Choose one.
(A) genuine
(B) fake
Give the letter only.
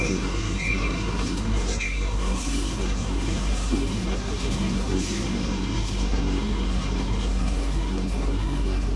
B